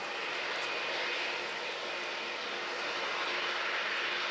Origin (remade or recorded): recorded